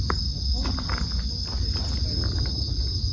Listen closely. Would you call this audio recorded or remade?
recorded